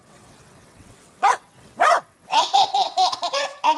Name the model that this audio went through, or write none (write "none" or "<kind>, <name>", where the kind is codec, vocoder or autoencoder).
vocoder, WaveNeXt